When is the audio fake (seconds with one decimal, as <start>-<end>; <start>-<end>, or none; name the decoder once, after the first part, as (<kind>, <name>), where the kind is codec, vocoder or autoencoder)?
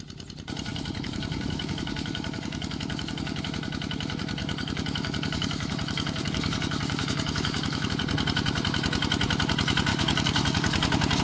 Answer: 0.7-3.4 (codec, DAC); 4.4-7.9; 9.9-11.2